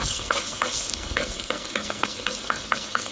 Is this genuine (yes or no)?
no